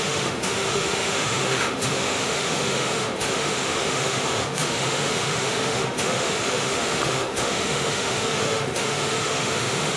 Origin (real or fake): fake